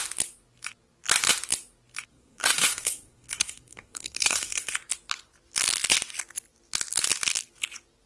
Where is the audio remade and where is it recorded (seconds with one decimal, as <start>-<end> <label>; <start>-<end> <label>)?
0.0-2.1 recorded; 2.1-4.7 remade; 4.7-8.1 recorded